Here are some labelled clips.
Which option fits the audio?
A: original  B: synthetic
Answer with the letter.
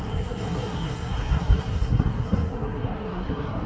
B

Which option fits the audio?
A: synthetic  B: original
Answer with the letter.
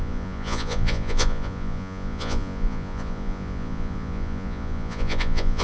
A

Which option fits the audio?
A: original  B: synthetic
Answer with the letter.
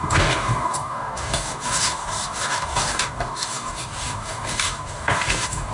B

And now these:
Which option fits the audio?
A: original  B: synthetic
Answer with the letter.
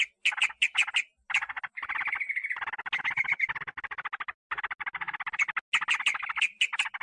A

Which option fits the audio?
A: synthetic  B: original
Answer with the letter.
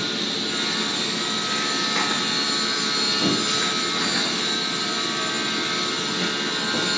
B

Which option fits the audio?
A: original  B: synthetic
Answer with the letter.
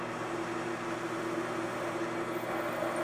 A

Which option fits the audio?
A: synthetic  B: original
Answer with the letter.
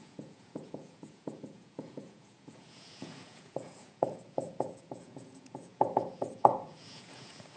A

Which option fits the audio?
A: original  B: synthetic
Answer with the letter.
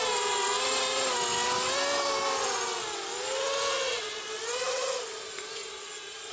A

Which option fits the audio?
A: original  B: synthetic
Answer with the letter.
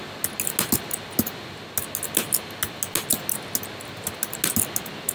A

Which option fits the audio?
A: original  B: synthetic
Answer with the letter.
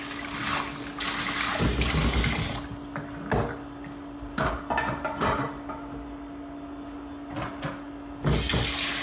A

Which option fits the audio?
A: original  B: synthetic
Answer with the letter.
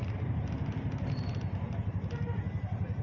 A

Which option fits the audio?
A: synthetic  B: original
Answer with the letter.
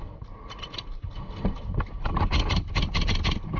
B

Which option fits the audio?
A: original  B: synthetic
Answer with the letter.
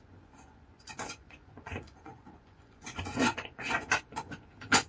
B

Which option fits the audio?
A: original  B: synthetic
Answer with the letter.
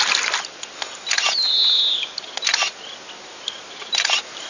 A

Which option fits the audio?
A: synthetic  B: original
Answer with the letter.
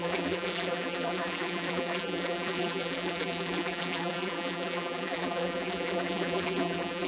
A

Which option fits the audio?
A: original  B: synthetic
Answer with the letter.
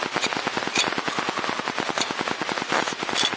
A